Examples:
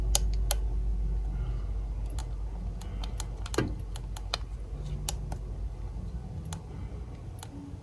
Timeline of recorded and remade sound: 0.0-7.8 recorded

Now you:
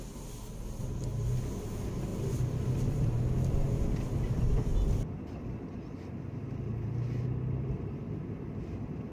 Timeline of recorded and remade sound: 0.0-9.1 recorded

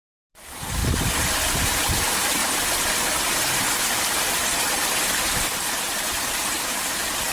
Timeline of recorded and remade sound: 0.0-0.8 remade; 0.8-1.4 recorded; 1.4-2.4 remade; 2.4-5.2 recorded; 5.2-7.3 remade

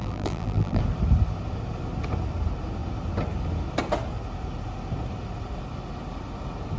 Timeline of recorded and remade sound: 0.0-0.8 remade; 0.8-6.8 recorded

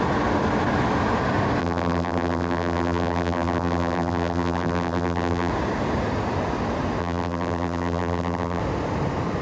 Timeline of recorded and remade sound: 0.0-1.6 recorded; 1.6-5.5 remade; 5.5-7.0 recorded; 7.0-8.6 remade; 8.6-9.4 recorded

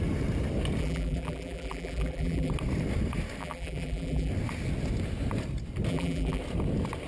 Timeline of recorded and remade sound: 0.0-0.8 recorded; 0.8-2.5 remade; 2.5-3.4 recorded; 3.4-4.3 remade; 4.3-5.9 recorded; 5.9-6.4 remade; 6.4-7.1 recorded

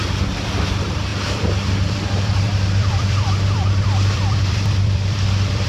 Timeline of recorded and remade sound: 0.0-5.7 remade